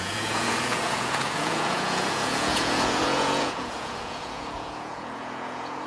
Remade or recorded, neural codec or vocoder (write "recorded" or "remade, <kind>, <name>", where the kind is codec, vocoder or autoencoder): remade, vocoder, Vocos